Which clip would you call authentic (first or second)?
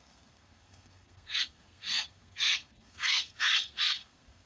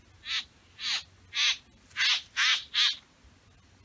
second